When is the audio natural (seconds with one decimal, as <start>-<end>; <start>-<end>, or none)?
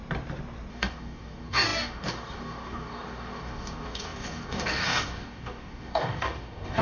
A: 0.0-0.7